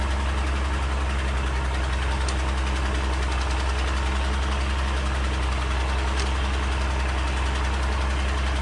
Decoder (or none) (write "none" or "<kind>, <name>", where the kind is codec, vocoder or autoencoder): none